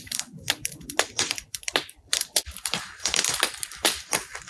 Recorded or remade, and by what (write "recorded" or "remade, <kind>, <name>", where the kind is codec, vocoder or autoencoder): remade, vocoder, BigVGAN v2